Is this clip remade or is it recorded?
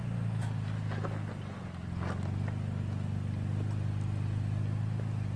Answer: recorded